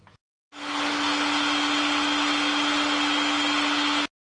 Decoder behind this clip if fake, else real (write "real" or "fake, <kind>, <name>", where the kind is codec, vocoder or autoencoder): real